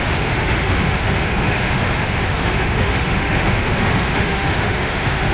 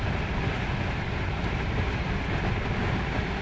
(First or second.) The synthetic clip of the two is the first